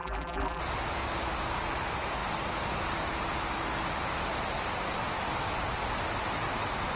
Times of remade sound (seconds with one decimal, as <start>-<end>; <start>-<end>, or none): 0.0-0.6